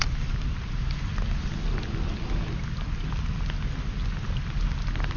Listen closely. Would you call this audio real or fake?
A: real